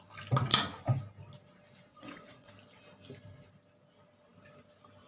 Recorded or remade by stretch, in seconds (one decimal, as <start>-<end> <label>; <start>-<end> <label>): 0.0-1.9 recorded; 1.9-2.5 remade; 2.5-5.1 recorded